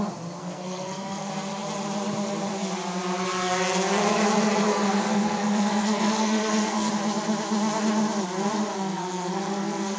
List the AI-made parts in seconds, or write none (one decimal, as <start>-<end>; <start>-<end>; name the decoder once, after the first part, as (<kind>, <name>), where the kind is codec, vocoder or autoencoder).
0.4-1.3 (codec, SNAC); 4.7-6.9; 8.7-10.0